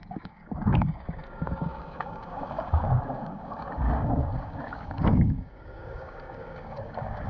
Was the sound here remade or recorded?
remade